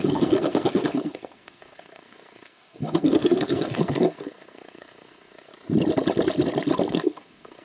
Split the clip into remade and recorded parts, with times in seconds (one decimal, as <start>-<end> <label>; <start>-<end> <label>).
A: 0.0-5.5 remade; 5.5-6.9 recorded; 6.9-7.6 remade